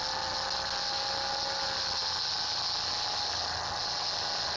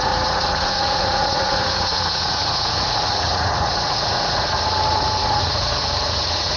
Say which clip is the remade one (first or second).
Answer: second